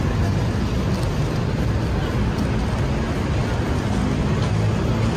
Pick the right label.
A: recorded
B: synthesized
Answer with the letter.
A